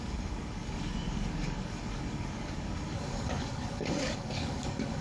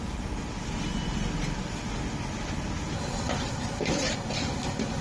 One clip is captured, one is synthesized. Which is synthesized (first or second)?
first